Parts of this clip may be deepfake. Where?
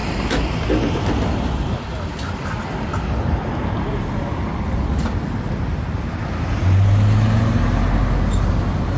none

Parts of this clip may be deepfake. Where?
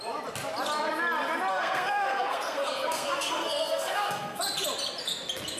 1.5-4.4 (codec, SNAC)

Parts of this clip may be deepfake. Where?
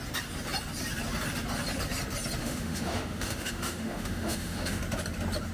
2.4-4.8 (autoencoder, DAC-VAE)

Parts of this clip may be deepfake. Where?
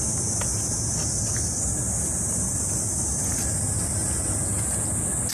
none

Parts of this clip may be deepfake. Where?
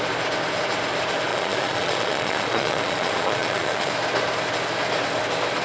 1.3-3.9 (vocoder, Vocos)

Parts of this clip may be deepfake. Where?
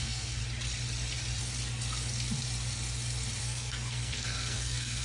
0.0-0.4 (codec, SNAC); 3.4-5.0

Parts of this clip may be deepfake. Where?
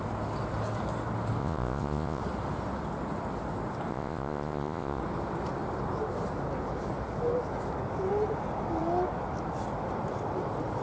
1.4-2.2 (vocoder, Vocos); 3.9-5.0